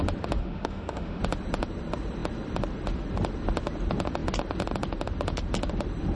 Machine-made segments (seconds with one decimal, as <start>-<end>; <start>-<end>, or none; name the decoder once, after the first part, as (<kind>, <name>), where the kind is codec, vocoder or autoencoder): 0.4-1.2 (autoencoder, DAC-VAE)